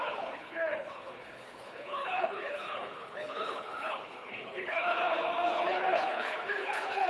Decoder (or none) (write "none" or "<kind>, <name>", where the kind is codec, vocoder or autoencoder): codec, HILCodec